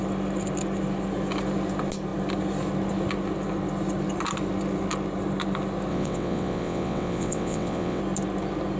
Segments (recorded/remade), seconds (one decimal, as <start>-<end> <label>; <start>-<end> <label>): 0.0-5.9 recorded; 5.9-8.0 remade; 8.0-8.8 recorded